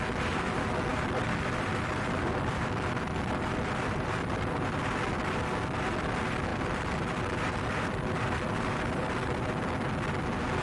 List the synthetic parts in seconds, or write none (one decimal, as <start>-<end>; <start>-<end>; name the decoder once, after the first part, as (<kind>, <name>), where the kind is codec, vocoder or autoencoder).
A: 0.9-4.8 (vocoder, BigVGAN v2); 6.5-9.6

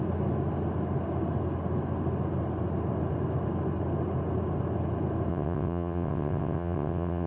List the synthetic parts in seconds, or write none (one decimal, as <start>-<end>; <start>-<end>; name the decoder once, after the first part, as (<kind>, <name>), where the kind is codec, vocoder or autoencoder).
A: 5.3-7.3 (vocoder, WaveNeXt)

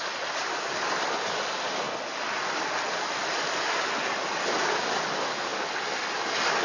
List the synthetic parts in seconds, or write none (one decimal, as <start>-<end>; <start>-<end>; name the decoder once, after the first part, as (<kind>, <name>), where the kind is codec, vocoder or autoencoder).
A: none

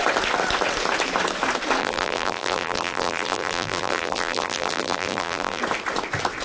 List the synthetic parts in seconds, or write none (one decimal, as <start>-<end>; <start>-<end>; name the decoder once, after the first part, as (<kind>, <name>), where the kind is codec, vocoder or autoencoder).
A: 1.8-5.6 (vocoder, BigVGAN v2)

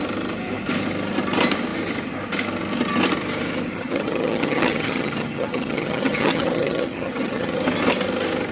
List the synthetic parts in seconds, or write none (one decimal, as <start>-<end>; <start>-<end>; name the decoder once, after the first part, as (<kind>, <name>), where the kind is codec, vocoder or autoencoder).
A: 3.7-7.6 (vocoder, HiFi-GAN)

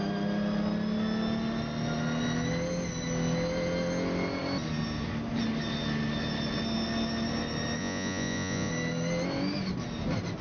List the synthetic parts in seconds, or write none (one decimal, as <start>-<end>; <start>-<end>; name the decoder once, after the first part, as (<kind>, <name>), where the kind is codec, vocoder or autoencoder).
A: 7.8-8.7 (vocoder, Vocos)

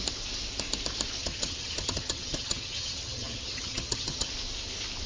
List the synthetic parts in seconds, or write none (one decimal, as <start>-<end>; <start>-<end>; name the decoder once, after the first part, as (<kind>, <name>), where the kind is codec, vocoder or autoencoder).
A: 1.2-4.3 (vocoder, HiFi-GAN)

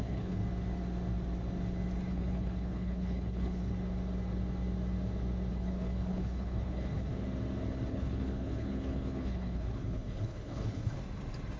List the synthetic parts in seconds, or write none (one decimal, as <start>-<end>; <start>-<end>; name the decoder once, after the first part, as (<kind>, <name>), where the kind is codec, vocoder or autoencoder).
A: 0.0-0.4 (codec, HILCodec); 2.1-3.7; 5.5-7.1; 7.9-11.0